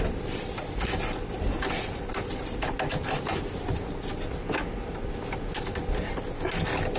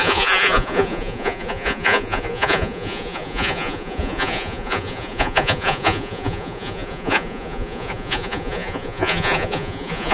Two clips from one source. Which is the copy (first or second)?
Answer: second